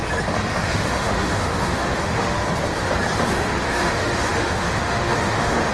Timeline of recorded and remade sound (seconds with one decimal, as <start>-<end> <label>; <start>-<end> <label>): 0.0-0.5 recorded; 0.5-2.4 remade; 2.4-3.3 recorded; 3.3-5.7 remade